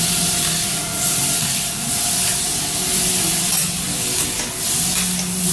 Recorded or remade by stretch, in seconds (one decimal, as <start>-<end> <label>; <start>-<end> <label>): 0.0-5.5 recorded